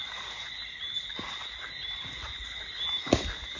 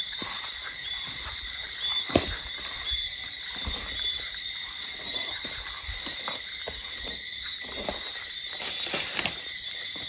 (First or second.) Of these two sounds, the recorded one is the first